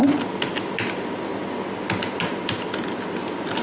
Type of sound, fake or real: real